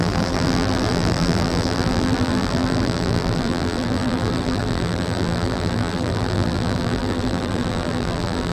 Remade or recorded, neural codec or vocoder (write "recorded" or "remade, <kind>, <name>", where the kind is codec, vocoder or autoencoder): remade, vocoder, BigVGAN v2